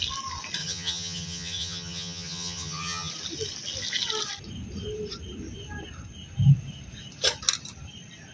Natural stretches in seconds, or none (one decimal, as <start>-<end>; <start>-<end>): 0.0-0.6; 3.1-8.3